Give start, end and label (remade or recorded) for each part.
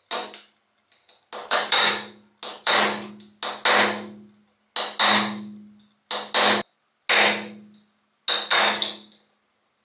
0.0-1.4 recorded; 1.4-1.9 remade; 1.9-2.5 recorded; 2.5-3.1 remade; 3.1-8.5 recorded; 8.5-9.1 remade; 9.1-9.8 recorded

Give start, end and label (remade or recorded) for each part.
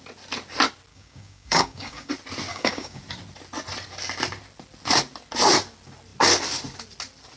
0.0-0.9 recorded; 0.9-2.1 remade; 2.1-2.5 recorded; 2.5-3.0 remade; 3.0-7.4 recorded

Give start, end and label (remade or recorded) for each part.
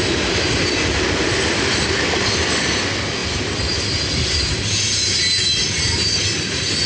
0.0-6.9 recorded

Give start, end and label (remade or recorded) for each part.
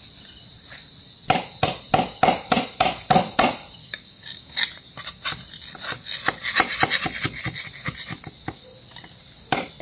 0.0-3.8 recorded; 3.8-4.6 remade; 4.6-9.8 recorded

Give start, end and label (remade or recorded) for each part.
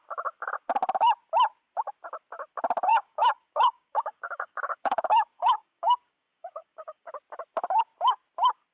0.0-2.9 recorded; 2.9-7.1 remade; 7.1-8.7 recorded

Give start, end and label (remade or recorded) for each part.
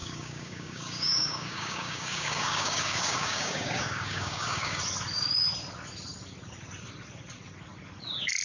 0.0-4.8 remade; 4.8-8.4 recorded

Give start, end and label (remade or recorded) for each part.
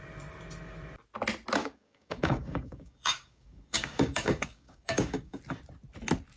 0.0-1.6 recorded; 1.6-5.4 remade; 5.4-6.4 recorded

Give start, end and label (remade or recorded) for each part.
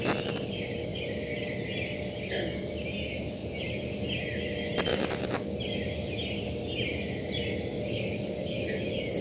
0.0-7.7 recorded; 7.7-8.6 remade; 8.6-9.2 recorded